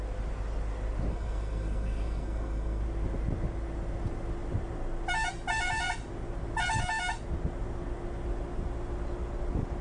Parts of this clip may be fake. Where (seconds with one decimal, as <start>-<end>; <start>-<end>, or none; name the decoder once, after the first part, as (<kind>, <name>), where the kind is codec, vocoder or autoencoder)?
1.1-2.8 (codec, SNAC)